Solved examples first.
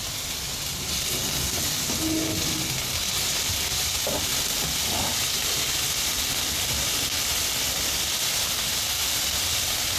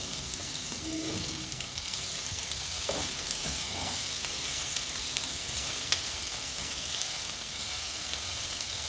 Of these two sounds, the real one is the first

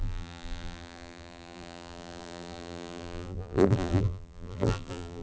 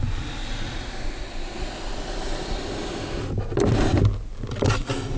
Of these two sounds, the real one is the second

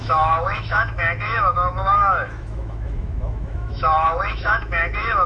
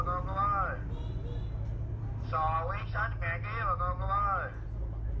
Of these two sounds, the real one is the second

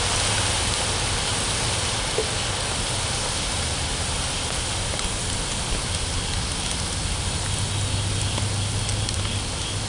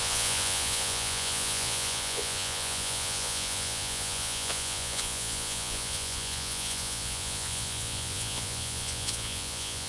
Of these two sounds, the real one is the first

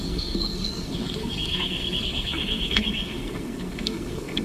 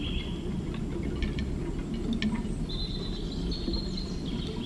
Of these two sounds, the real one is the second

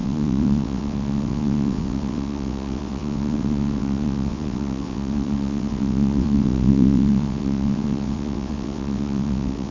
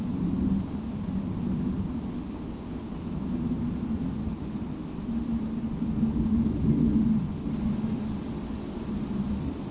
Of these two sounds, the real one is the second